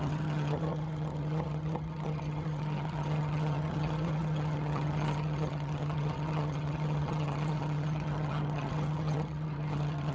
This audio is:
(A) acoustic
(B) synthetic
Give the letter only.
B